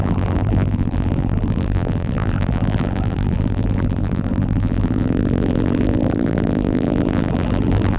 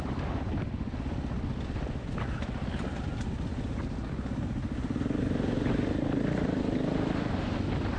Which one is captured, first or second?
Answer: second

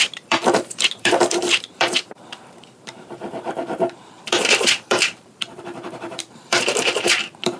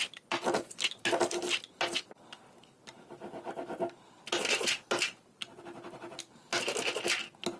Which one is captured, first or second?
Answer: second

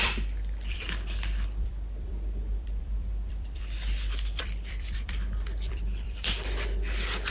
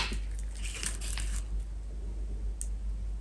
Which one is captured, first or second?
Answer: second